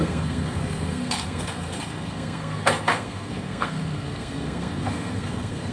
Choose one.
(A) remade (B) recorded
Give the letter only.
A